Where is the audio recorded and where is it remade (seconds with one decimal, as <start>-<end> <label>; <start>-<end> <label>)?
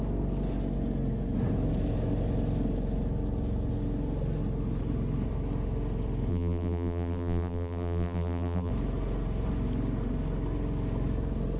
0.0-6.3 recorded; 6.3-8.7 remade; 8.7-11.6 recorded